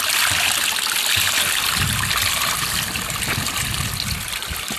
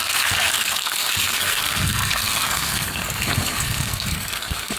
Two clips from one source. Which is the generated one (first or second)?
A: second